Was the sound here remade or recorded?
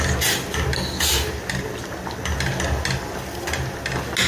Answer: recorded